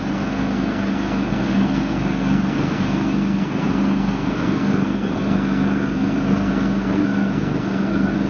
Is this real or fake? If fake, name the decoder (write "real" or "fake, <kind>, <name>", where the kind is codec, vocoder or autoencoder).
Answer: fake, codec, SNAC